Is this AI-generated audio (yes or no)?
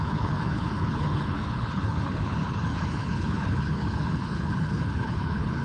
yes